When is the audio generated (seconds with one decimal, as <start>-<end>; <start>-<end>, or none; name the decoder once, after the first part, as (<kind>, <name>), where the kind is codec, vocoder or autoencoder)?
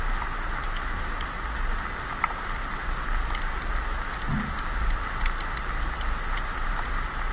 none